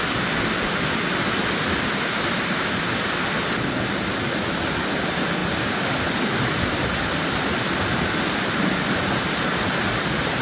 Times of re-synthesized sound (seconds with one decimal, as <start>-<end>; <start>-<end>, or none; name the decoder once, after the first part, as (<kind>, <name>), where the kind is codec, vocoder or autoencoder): none